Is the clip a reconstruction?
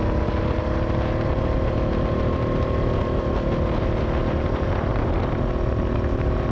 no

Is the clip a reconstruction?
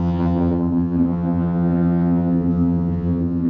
yes